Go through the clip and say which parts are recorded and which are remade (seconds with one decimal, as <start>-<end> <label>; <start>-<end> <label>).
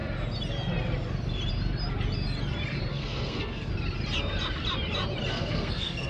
0.0-2.9 recorded; 2.9-3.7 remade; 3.7-5.3 recorded; 5.3-6.1 remade